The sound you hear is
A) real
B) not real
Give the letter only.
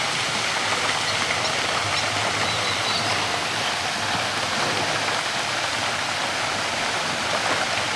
A